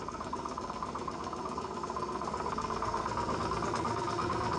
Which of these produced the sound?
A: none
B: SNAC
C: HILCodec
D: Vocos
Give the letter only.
B